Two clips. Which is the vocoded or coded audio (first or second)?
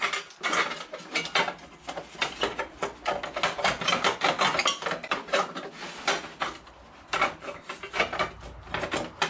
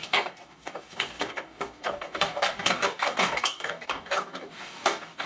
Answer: second